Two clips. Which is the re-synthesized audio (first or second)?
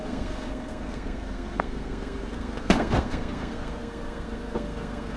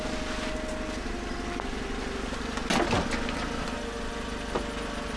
first